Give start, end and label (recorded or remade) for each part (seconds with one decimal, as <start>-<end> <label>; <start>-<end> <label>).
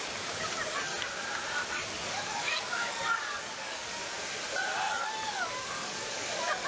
0.0-0.9 remade; 0.9-1.7 recorded; 1.7-4.0 remade; 4.0-4.9 recorded; 4.9-6.7 remade